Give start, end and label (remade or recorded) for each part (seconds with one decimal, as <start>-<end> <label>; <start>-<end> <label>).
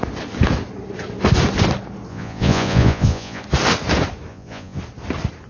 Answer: 0.0-2.1 recorded; 2.1-3.4 remade; 3.4-4.3 recorded; 4.3-4.8 remade; 4.8-5.5 recorded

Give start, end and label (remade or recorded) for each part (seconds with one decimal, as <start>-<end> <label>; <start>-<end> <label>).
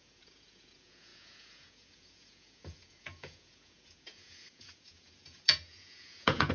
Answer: 0.0-6.5 remade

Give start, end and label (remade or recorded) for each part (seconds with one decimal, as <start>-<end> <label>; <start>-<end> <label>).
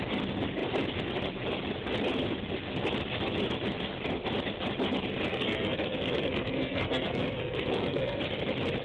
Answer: 0.0-5.3 recorded; 5.3-8.2 remade; 8.2-8.8 recorded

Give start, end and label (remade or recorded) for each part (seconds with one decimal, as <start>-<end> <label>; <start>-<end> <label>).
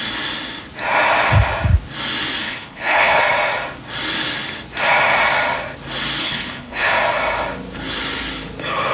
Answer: 0.0-2.4 recorded; 2.4-3.2 remade; 3.2-6.2 recorded; 6.2-6.9 remade; 6.9-8.9 recorded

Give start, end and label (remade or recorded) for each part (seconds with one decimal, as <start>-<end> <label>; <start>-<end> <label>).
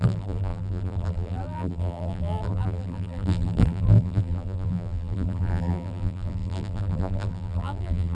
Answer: 0.0-8.1 remade